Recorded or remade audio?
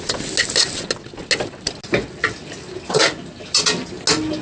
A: recorded